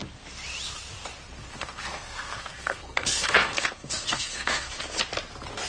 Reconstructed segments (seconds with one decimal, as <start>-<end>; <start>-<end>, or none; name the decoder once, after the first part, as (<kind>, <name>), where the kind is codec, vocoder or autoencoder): 1.4-4.8 (codec, SNAC)